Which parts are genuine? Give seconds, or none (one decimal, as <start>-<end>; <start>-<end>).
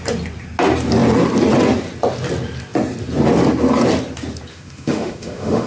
0.0-4.5